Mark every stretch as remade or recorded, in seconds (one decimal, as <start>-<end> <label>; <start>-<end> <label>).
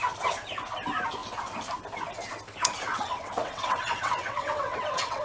0.0-2.9 recorded; 2.9-5.2 remade